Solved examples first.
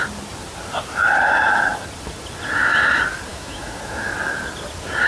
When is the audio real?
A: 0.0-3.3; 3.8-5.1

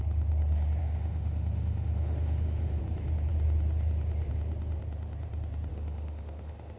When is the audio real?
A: 0.0-0.8; 2.8-5.7

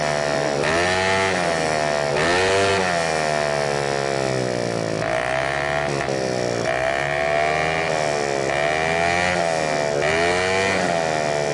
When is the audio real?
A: 0.0-11.5